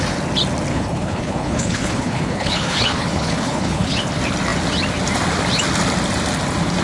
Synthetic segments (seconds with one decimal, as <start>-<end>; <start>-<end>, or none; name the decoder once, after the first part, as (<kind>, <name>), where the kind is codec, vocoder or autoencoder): 0.7-4.1 (codec, HILCodec)